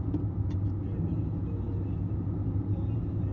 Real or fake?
real